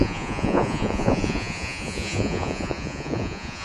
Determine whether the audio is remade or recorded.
remade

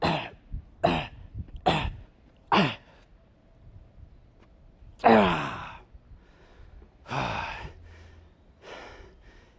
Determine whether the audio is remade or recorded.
recorded